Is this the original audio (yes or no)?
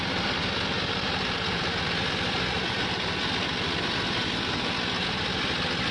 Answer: yes